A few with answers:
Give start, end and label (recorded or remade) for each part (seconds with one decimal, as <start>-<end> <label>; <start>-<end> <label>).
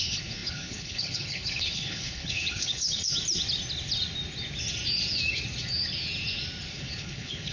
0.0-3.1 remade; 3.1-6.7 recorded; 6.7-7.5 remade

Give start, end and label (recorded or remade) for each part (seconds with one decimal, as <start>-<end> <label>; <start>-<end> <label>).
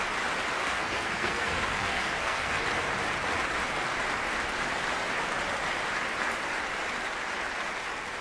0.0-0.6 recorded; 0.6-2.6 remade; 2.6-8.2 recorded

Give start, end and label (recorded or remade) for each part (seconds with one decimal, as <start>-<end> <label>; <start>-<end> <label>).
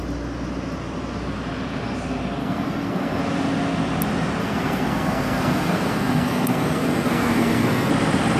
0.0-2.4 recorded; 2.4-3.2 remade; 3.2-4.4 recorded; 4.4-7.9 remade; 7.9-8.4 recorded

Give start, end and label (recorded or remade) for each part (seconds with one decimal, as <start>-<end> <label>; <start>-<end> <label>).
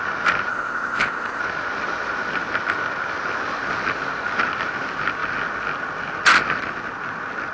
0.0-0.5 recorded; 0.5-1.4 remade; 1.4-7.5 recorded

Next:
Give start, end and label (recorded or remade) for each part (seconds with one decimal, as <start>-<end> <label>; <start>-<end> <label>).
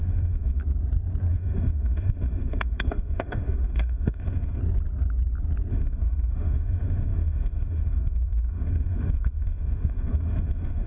0.0-0.6 remade; 0.6-1.3 recorded; 1.3-4.6 remade; 4.6-5.7 recorded; 5.7-10.9 remade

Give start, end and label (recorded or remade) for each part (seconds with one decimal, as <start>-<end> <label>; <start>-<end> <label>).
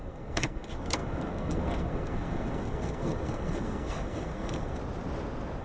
0.0-4.8 remade; 4.8-5.6 recorded